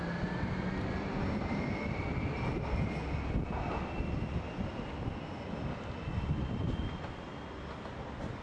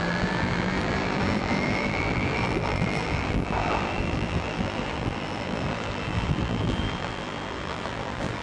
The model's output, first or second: second